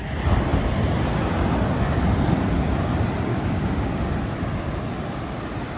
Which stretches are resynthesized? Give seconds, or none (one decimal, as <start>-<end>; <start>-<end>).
3.3-4.1